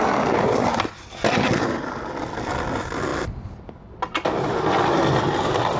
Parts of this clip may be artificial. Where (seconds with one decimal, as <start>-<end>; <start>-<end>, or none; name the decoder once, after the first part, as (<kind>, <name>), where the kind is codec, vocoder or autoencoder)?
none